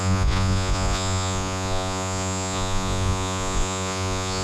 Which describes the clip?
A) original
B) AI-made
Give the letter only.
B